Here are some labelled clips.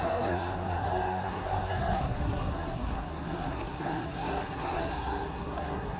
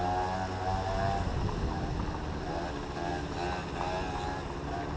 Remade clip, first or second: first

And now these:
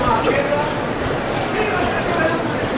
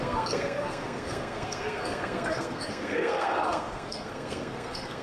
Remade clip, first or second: second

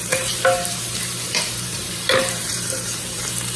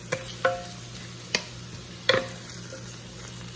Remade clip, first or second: first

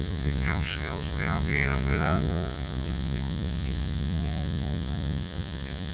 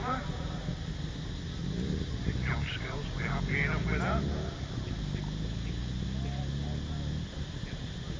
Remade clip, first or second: first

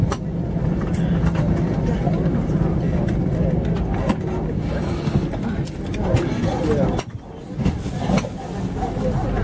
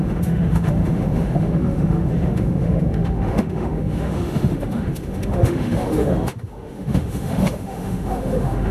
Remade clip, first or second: second